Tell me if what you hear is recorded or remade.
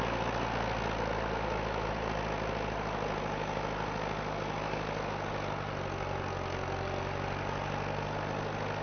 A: recorded